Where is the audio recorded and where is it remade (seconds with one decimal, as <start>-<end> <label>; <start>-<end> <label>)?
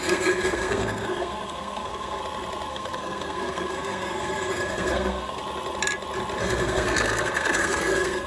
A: 0.0-2.2 remade; 2.2-2.7 recorded; 2.7-5.4 remade; 5.4-6.4 recorded; 6.4-8.3 remade